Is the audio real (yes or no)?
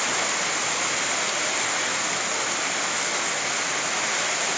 yes